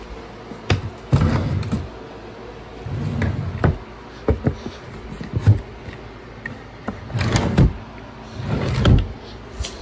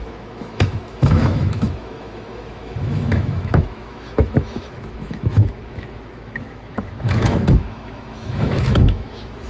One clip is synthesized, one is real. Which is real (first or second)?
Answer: first